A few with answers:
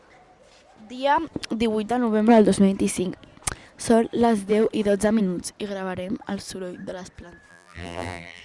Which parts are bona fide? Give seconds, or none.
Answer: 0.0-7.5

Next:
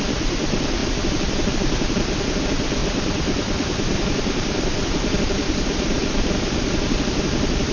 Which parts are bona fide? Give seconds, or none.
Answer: 0.0-2.8; 7.0-7.7

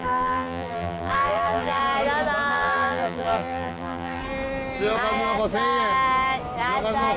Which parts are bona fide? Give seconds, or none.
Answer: 1.8-2.5; 4.2-7.2

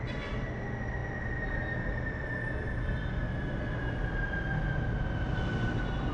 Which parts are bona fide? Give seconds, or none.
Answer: 0.0-6.1